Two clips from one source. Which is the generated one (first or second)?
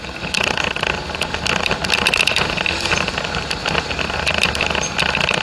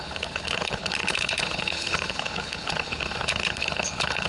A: second